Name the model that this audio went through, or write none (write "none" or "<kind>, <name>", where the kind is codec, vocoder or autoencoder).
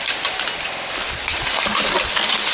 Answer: none